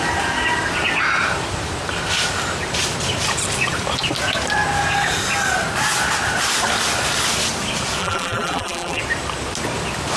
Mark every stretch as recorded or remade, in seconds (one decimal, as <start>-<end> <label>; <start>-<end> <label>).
0.0-8.0 recorded; 8.0-9.0 remade; 9.0-10.2 recorded